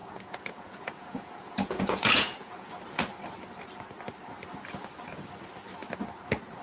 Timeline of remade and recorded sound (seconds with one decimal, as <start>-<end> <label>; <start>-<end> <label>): 0.0-2.7 remade; 2.7-6.6 recorded